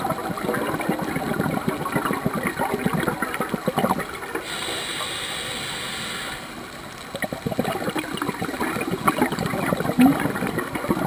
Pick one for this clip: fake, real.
real